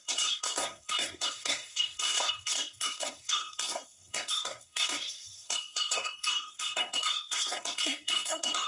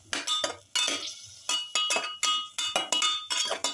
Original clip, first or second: second